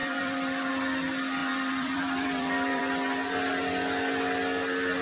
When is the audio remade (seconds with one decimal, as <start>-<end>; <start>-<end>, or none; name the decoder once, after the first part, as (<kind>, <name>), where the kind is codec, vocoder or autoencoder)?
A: 0.0-0.7 (vocoder, BigVGAN v2); 1.4-2.8